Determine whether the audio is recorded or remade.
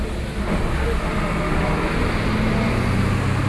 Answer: recorded